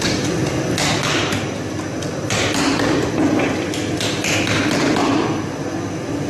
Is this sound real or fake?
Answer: real